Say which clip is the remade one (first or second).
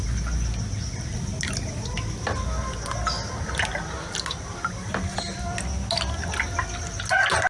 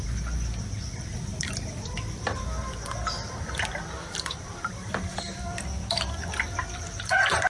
second